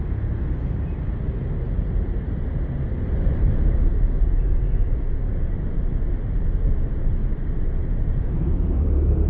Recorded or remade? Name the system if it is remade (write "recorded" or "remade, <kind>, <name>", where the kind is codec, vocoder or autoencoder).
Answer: remade, vocoder, BigVGAN v2